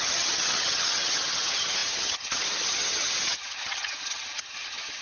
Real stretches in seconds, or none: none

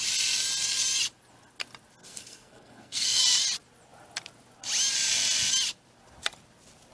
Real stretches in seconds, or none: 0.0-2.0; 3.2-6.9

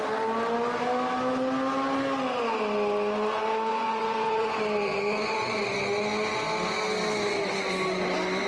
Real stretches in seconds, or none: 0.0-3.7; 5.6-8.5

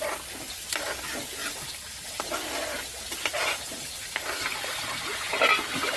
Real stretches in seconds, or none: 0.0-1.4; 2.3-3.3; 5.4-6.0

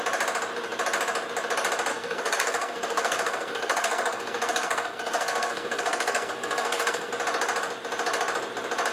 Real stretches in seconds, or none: 0.0-1.9; 7.1-8.9

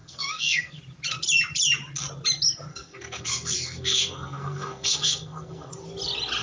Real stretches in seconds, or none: 0.8-2.7; 5.7-6.4

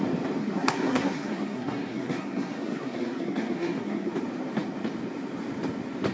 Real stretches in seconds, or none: 0.0-0.4; 4.1-6.1